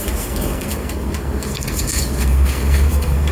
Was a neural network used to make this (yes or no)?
yes